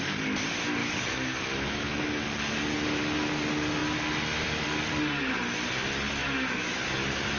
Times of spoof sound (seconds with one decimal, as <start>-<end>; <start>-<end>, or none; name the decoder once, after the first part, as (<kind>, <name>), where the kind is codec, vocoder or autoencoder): 0.8-2.0 (autoencoder, DAC-VAE); 6.2-6.8